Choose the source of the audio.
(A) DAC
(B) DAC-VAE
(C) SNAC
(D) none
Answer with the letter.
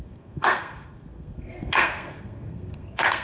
C